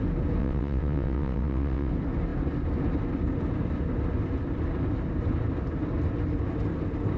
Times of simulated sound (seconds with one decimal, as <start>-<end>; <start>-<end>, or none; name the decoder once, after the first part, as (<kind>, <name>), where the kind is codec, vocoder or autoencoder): 0.4-1.9 (vocoder, WaveNeXt)